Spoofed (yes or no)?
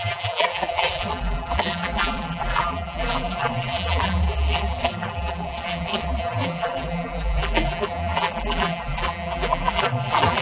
yes